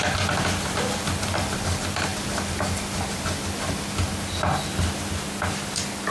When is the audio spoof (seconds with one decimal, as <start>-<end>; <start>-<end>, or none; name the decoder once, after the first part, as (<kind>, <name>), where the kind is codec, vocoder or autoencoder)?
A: none